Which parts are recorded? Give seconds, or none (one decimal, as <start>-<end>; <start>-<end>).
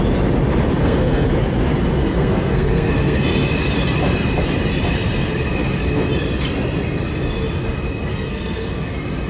0.0-0.8; 1.3-2.0; 3.2-8.1; 8.7-9.3